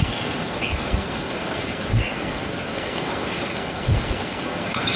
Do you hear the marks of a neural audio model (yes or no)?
yes